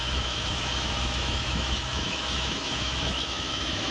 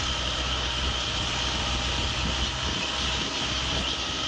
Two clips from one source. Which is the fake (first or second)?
first